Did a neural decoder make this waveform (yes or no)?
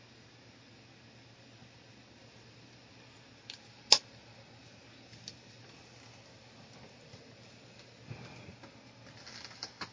no